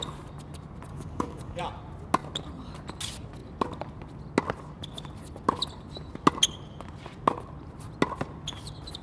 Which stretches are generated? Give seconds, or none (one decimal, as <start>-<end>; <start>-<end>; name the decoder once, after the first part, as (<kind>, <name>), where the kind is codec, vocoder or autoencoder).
0.9-1.6 (codec, DAC)